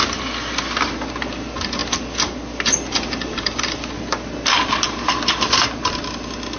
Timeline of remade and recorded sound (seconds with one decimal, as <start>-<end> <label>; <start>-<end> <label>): 0.0-6.6 recorded